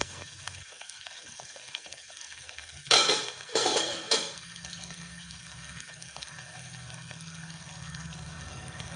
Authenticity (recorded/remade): remade